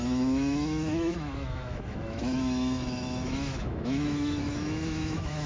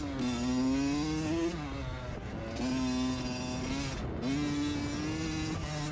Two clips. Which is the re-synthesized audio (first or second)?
first